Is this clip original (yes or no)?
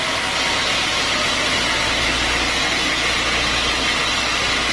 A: yes